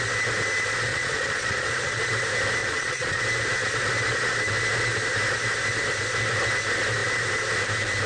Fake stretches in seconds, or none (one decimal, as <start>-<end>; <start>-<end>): 0.9-2.0; 2.6-3.2